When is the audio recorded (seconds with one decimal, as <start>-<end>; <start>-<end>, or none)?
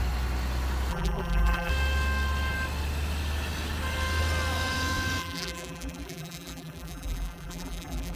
0.0-0.9; 1.7-5.2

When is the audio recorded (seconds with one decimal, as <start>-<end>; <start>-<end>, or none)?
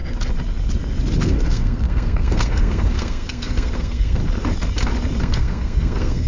0.0-1.2; 4.2-5.2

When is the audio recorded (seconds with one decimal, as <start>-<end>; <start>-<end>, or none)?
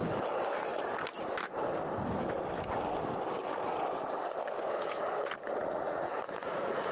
0.0-5.6